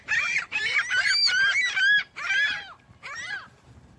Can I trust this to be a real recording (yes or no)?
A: no